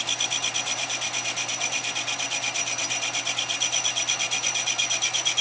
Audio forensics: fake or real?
real